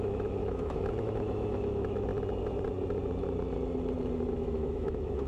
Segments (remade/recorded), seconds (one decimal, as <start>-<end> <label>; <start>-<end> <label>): 0.0-2.1 remade; 2.1-4.3 recorded; 4.3-5.3 remade